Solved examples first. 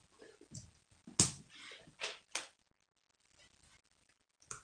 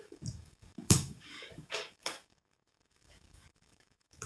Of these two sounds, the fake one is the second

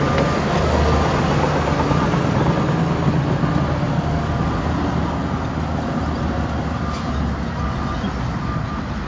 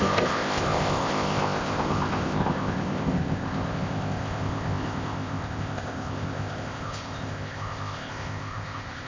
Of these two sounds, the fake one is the second